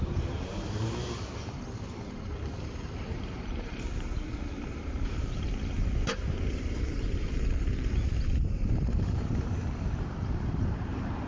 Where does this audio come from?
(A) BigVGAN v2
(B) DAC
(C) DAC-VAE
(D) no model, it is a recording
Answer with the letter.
A